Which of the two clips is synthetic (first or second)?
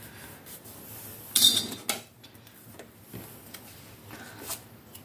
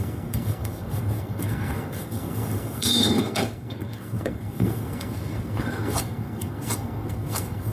second